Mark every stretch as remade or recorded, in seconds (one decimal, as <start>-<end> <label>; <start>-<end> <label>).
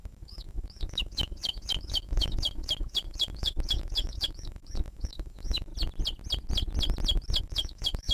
0.0-5.7 remade; 5.7-7.4 recorded; 7.4-8.1 remade